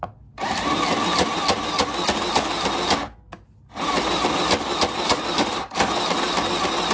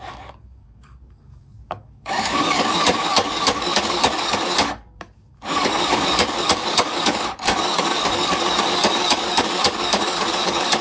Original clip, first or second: first